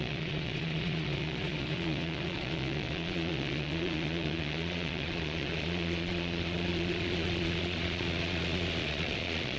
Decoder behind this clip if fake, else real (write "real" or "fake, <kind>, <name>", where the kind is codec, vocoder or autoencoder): fake, vocoder, Vocos